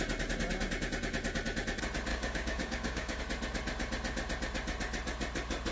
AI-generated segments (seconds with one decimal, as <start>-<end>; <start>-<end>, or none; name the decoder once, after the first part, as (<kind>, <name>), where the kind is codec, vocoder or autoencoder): 2.1-3.2 (codec, DAC)